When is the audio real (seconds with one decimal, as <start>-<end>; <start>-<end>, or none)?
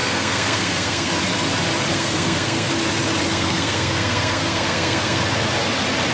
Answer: 1.1-1.9; 2.7-3.3; 5.2-6.1